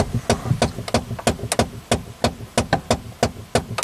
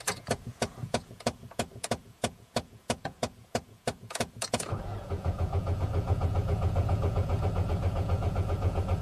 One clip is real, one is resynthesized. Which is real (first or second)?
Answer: first